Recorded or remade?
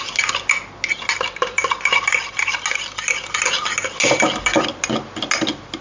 recorded